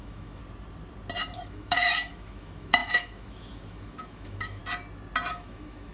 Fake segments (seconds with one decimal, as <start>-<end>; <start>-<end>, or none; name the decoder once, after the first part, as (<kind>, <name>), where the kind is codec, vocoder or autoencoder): 0.0-0.4 (autoencoder, DAC-VAE); 1.2-4.6; 5.3-5.9

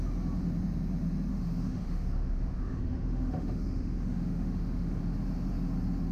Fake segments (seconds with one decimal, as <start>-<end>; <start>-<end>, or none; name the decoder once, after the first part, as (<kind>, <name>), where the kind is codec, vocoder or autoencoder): 1.3-5.0 (autoencoder, DAC-VAE)

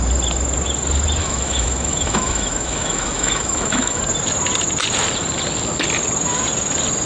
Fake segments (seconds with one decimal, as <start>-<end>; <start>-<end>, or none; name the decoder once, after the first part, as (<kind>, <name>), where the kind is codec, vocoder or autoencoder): 1.2-4.0 (autoencoder, DAC-VAE)

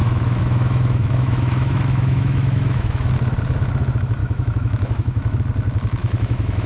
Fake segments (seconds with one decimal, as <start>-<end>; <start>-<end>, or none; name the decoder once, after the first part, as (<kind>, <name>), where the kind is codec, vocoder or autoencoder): 0.0-3.1 (autoencoder, DAC-VAE); 4.2-5.4; 6.0-6.7

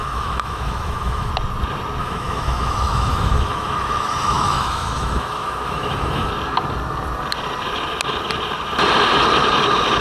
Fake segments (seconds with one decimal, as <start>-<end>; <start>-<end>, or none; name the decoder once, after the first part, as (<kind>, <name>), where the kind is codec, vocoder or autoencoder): 0.0-1.3 (autoencoder, DAC-VAE); 2.0-6.3

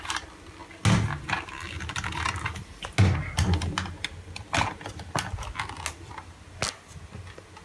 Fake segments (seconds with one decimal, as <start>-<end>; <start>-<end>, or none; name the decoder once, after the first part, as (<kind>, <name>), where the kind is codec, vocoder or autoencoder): none

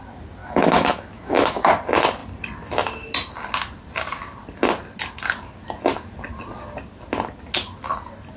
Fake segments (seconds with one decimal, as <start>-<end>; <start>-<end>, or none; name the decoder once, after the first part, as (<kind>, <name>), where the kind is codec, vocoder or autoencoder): 0.4-1.7 (autoencoder, DAC-VAE)